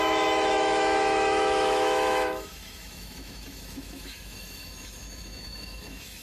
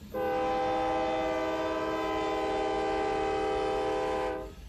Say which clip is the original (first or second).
second